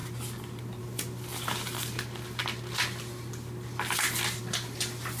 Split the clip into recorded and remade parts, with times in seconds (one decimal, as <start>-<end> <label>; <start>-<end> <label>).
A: 0.0-5.2 recorded